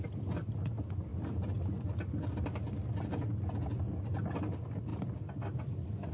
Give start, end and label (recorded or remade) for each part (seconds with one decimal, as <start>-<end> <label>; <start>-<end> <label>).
0.0-6.1 recorded